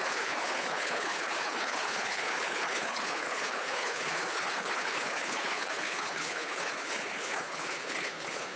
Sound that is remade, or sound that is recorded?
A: remade